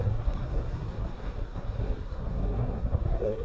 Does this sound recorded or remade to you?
remade